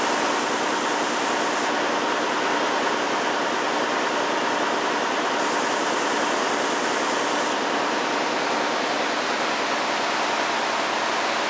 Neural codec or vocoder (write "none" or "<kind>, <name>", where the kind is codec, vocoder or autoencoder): none